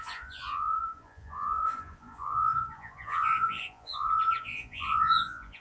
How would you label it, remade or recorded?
remade